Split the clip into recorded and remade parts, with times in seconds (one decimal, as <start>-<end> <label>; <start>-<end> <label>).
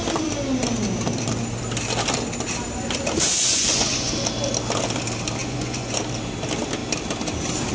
0.0-3.3 recorded; 3.3-4.1 remade; 4.1-5.4 recorded; 5.4-6.0 remade; 6.0-7.7 recorded